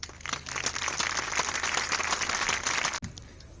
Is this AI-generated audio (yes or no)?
no